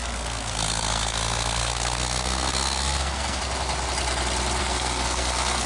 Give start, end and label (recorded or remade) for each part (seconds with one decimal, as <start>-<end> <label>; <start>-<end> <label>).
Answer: 0.0-3.4 remade; 3.4-4.6 recorded; 4.6-5.7 remade